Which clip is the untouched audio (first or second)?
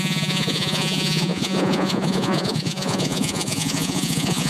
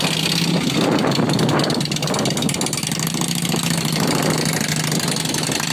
second